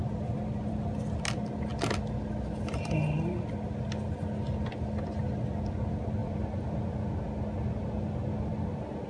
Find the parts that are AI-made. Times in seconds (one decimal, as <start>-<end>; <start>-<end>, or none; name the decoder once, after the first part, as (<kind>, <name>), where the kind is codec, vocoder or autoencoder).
none